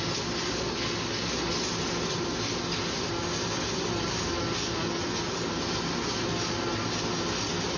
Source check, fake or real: real